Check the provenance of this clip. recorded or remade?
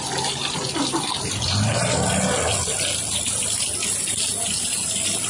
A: recorded